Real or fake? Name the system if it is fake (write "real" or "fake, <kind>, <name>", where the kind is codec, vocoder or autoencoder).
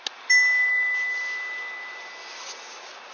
real